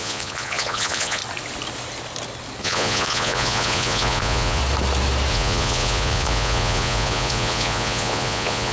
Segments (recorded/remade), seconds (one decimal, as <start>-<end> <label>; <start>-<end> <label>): 0.0-1.2 remade; 1.2-2.6 recorded; 2.6-4.6 remade; 4.6-5.3 recorded; 5.3-8.7 remade